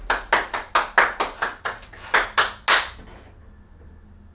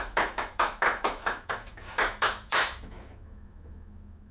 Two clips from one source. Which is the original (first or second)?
first